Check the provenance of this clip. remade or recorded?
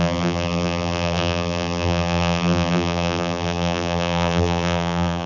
remade